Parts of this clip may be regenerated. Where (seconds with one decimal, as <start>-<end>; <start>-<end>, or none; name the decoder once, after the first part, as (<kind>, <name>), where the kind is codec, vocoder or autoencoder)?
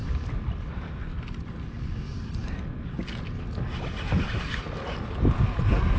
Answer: none